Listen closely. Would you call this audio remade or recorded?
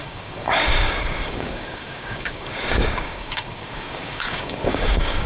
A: remade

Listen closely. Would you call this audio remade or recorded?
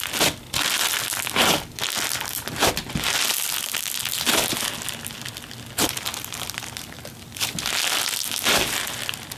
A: recorded